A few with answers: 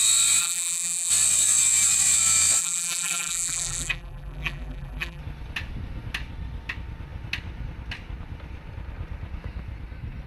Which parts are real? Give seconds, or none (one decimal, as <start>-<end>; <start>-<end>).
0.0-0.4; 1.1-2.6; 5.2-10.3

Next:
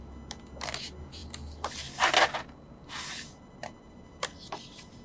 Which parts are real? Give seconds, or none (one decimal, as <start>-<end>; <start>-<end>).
0.0-5.0

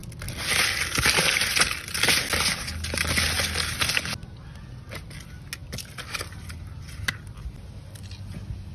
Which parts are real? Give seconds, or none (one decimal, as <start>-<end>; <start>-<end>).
0.0-8.7

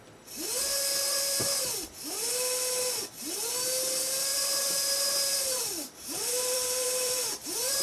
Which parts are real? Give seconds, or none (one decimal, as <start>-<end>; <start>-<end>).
0.0-4.3

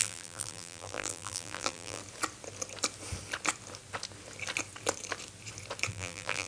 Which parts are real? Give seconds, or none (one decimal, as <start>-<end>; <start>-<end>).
2.0-5.9